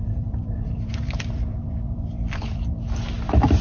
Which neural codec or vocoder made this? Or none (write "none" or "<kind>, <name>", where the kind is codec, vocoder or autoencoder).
vocoder, BigVGAN v2